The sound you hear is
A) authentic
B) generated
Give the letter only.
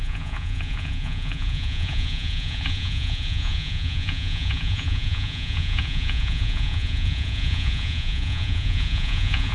B